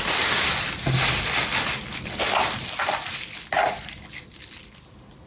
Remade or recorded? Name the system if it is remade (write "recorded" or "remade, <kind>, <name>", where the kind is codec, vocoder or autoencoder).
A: recorded